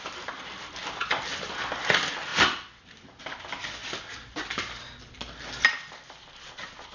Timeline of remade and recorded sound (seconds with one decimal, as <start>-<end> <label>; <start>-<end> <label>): 0.0-6.9 recorded